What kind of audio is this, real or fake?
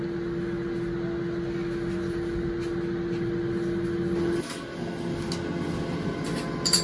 real